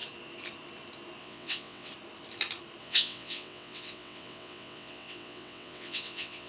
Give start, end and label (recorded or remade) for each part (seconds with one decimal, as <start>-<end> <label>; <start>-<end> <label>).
0.0-1.2 recorded; 1.2-1.9 remade; 1.9-2.8 recorded; 2.8-6.5 remade